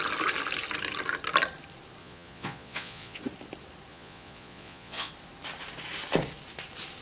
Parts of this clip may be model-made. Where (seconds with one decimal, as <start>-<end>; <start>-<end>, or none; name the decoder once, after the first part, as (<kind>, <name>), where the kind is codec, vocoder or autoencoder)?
2.0-3.2 (vocoder, Vocos); 3.9-5.1